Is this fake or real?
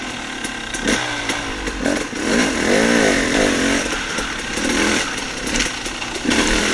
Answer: fake